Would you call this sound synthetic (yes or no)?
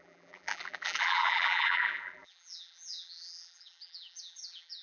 yes